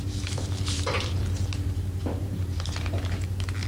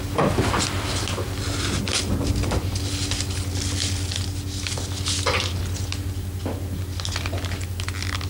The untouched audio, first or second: second